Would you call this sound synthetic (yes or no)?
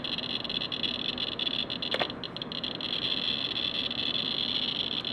no